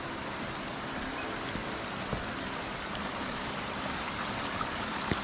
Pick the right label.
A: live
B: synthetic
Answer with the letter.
B